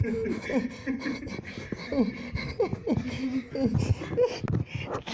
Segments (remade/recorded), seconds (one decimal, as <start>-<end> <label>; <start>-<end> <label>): 0.0-5.1 recorded